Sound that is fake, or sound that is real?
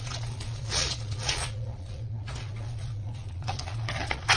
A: fake